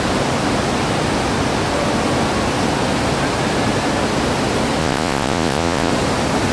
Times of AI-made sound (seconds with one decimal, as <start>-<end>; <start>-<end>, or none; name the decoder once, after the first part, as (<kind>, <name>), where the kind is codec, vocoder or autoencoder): 4.8-5.9 (vocoder, Vocos)